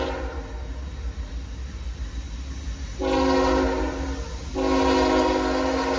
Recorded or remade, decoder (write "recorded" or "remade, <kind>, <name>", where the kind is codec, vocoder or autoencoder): recorded